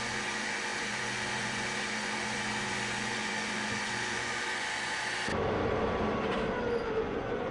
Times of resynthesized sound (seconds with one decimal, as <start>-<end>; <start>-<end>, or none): 0.0-5.3; 6.9-7.5